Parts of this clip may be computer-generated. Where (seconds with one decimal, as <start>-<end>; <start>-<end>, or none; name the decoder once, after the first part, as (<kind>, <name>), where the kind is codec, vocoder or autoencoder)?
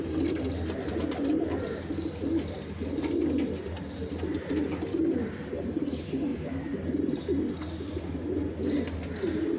none